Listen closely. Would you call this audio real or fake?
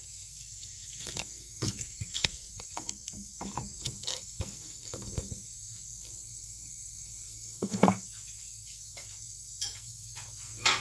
fake